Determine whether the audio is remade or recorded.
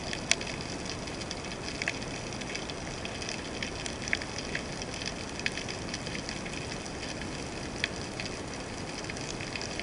recorded